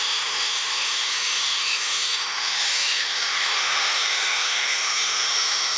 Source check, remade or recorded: remade